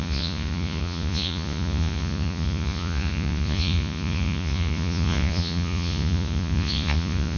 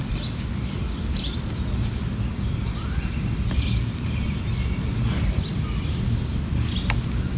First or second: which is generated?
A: first